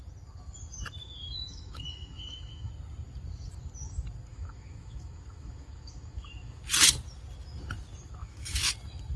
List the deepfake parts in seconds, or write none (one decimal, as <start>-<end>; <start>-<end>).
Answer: 1.0-2.7; 4.3-6.6; 8.2-8.7